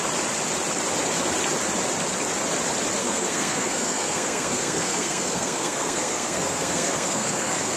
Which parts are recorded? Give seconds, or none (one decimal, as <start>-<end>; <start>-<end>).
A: 0.0-3.0

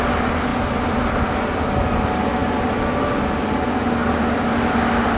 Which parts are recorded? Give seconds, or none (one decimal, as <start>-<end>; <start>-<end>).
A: 0.0-5.2

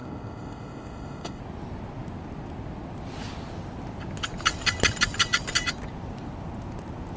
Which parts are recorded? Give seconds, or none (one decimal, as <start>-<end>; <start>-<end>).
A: 1.4-7.2

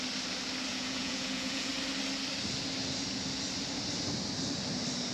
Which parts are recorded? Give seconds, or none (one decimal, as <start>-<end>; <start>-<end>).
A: 0.0-0.7; 1.7-5.1

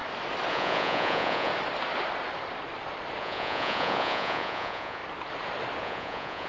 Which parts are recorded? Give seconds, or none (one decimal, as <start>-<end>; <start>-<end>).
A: 0.0-0.5; 1.5-3.2; 5.0-5.8

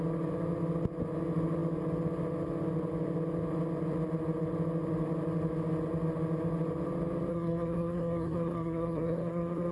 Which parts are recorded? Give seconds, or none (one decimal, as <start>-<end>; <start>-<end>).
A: 0.0-7.3

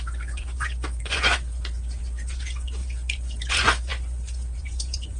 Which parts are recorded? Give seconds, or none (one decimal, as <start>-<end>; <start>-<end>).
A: none

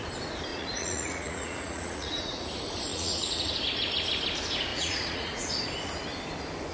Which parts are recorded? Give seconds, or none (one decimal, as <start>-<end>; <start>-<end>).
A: 0.0-0.5; 2.4-2.9; 3.5-4.7; 5.5-6.7